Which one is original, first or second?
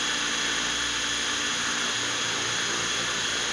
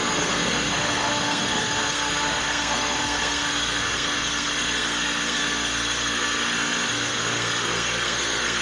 first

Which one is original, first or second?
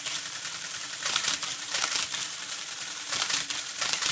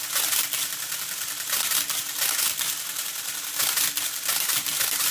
second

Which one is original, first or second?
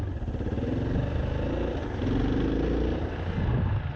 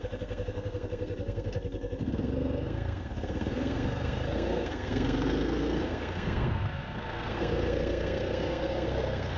first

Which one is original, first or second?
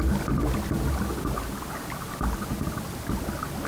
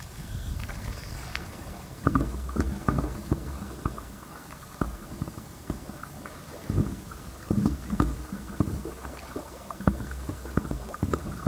first